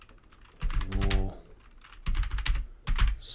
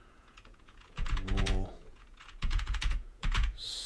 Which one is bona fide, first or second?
first